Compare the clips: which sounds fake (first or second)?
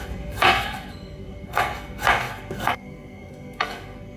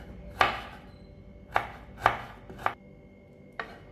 first